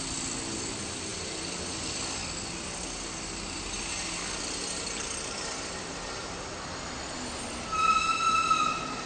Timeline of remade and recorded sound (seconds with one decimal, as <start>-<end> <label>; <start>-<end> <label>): 0.0-9.1 recorded